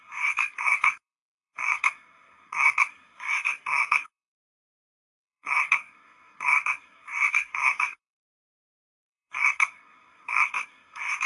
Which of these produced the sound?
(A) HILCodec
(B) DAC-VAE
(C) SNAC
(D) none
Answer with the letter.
C